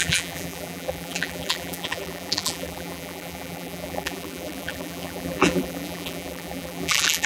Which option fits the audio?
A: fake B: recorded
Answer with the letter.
A